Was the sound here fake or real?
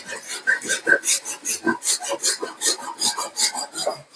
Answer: real